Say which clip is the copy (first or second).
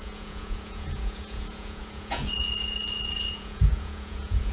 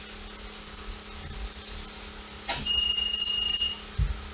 first